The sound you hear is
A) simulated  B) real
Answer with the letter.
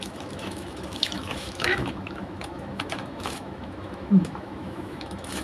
A